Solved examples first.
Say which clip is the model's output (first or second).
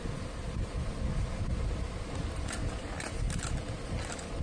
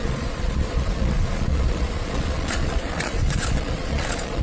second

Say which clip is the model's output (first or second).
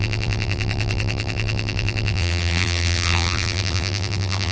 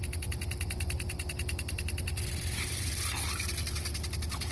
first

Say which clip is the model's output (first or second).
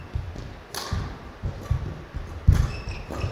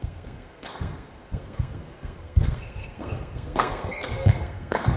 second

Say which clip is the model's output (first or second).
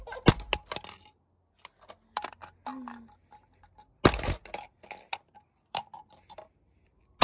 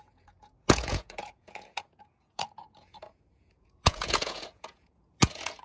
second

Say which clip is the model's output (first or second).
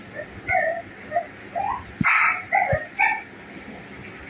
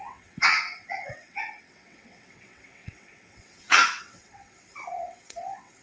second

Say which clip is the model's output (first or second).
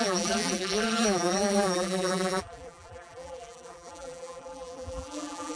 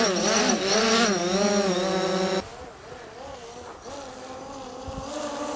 first